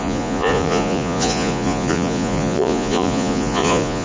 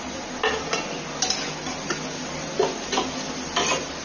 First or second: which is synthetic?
first